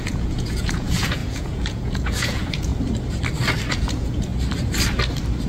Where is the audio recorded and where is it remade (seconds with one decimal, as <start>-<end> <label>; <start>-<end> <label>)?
0.0-2.7 remade; 2.7-3.7 recorded; 3.7-4.3 remade; 4.3-5.5 recorded